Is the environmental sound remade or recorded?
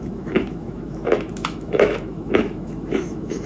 remade